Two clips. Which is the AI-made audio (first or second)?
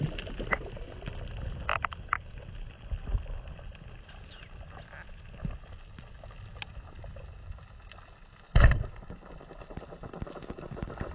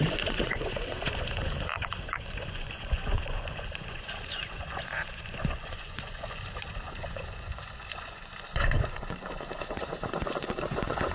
second